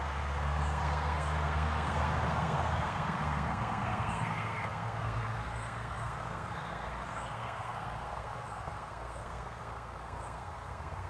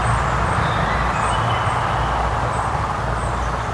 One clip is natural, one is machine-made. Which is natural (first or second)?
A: second